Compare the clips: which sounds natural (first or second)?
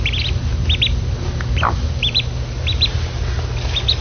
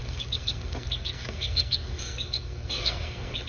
first